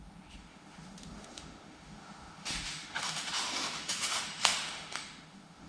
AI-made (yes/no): yes